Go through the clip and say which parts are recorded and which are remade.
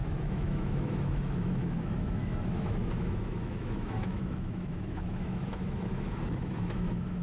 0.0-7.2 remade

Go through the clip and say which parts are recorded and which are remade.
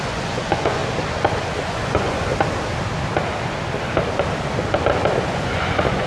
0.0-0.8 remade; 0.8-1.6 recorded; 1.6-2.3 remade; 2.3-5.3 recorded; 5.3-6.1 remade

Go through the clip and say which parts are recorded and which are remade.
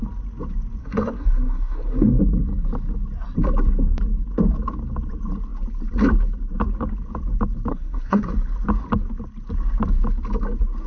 0.0-0.8 recorded; 0.8-2.2 remade; 2.2-7.7 recorded; 7.7-8.3 remade; 8.3-10.9 recorded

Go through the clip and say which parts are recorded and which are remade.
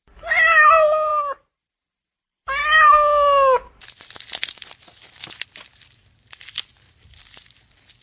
0.0-8.0 recorded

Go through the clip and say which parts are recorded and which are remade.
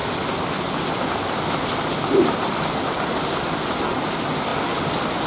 0.0-5.3 recorded